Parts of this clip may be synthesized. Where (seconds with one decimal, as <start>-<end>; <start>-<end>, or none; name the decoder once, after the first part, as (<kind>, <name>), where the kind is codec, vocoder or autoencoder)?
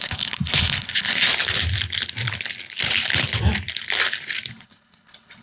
0.0-1.3 (codec, HILCodec); 4.5-5.4